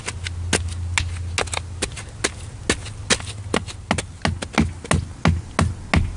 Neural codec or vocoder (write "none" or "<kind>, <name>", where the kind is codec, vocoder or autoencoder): none